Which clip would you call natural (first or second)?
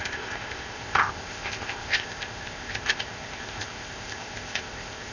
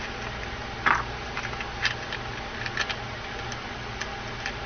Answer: second